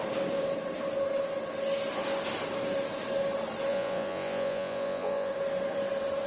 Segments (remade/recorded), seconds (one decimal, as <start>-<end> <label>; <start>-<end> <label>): 0.0-3.7 recorded; 3.7-5.3 remade; 5.3-6.3 recorded